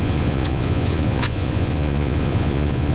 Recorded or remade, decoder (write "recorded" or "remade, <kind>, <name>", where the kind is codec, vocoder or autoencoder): remade, vocoder, Vocos